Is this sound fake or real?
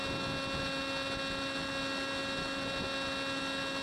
real